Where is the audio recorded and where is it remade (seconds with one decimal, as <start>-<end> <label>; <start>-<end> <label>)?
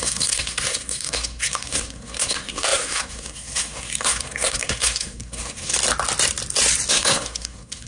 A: 0.0-5.7 remade; 5.7-6.9 recorded; 6.9-7.9 remade